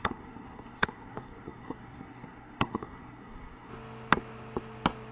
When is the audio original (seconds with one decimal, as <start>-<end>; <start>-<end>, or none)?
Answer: 3.7-5.1